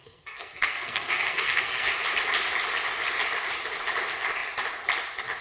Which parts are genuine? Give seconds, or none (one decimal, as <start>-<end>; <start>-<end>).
1.9-5.4